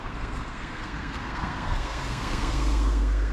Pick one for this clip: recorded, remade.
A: remade